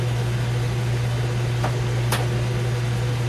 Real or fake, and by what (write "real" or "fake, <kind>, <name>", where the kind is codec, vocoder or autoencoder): real